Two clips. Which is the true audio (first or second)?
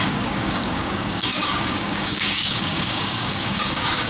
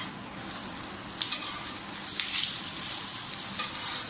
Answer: second